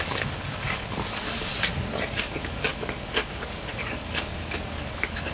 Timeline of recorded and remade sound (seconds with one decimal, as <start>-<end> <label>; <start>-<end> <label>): 0.0-1.5 remade; 1.5-2.3 recorded; 2.3-5.3 remade